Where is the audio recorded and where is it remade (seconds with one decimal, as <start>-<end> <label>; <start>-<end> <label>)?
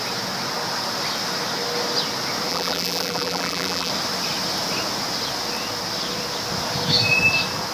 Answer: 0.0-2.5 recorded; 2.5-3.9 remade; 3.9-7.7 recorded